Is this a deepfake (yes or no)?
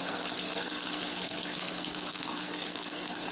yes